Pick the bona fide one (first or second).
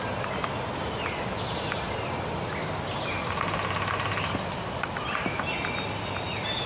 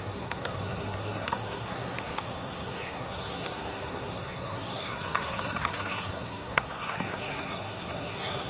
first